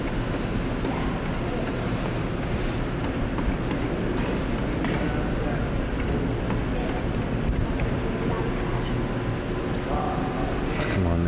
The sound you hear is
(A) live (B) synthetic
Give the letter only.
A